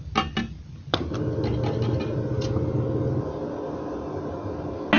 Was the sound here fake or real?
real